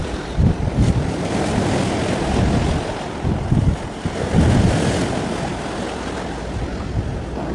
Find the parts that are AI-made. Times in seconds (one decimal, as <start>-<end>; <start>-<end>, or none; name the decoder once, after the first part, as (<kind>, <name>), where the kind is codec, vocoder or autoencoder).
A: none